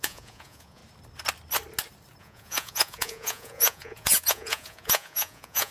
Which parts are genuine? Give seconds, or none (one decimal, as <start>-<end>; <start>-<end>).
0.8-2.2